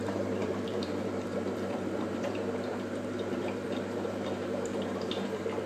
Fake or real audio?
fake